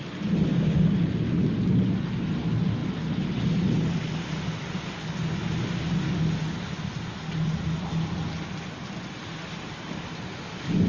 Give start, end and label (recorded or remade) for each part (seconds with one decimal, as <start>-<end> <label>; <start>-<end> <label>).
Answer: 0.0-0.5 recorded; 0.5-1.0 remade; 1.0-10.9 recorded